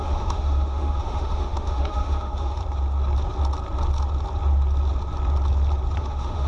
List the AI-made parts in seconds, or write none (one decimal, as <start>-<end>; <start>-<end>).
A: 0.0-2.6; 6.0-6.5